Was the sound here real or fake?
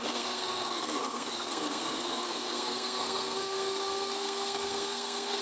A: fake